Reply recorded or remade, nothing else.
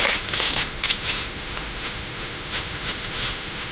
remade